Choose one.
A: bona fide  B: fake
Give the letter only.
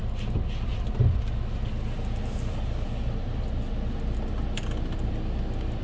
A